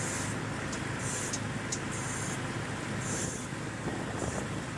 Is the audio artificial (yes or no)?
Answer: no